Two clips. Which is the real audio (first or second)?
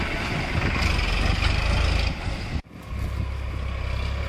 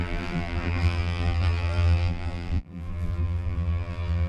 first